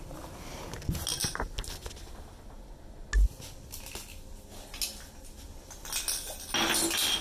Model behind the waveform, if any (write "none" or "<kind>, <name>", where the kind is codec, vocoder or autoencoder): none